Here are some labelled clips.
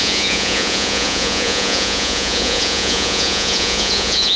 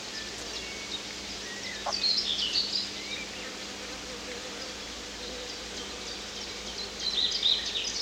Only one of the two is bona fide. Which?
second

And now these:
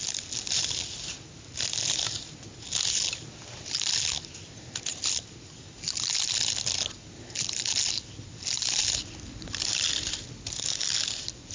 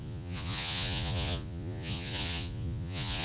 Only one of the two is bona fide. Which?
first